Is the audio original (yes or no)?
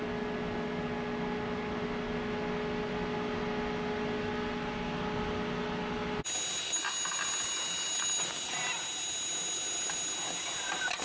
yes